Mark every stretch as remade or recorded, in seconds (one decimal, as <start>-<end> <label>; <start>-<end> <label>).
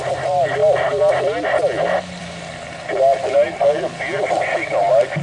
0.0-5.2 recorded